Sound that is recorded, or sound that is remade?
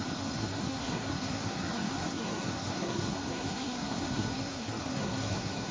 remade